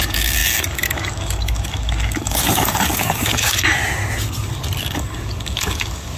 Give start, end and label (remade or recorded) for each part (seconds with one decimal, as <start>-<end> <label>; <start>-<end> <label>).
0.0-3.8 remade; 3.8-4.8 recorded; 4.8-6.2 remade